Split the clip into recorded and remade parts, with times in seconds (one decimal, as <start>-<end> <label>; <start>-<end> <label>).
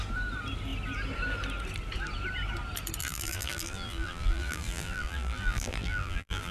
0.0-3.0 recorded; 3.0-6.5 remade